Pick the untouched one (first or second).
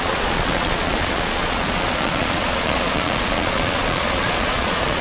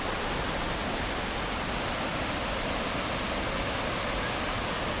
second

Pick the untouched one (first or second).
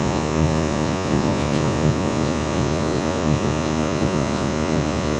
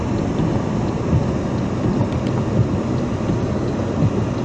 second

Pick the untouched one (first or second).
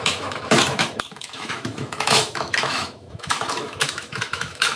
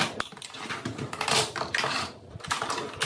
second